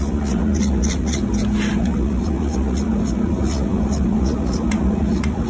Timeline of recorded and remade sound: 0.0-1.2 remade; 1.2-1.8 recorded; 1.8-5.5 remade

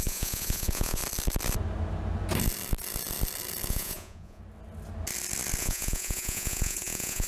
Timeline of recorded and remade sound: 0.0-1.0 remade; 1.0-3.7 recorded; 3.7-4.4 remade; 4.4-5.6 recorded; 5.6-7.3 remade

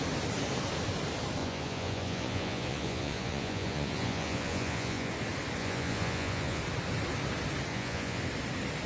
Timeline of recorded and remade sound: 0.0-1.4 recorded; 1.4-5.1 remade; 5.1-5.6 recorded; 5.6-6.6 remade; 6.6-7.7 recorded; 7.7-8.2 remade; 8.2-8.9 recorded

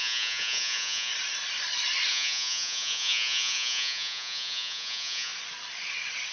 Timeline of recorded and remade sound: 0.0-1.1 remade; 1.1-2.1 recorded; 2.1-5.3 remade; 5.3-6.3 recorded